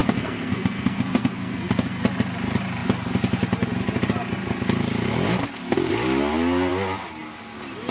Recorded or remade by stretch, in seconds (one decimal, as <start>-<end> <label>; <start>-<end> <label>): 0.0-2.0 remade; 2.0-7.9 recorded